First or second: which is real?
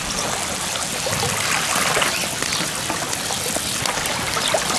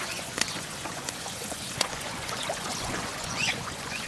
first